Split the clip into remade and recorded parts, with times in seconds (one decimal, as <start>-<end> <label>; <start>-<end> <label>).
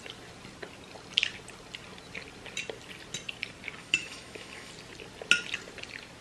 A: 0.0-3.8 recorded; 3.8-4.7 remade; 4.7-6.2 recorded